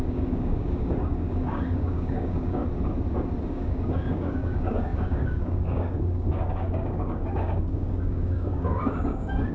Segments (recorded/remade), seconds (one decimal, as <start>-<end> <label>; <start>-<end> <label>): 0.0-2.6 remade; 2.6-3.4 recorded; 3.4-9.5 remade